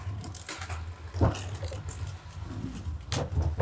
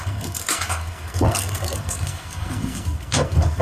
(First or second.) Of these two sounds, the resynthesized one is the second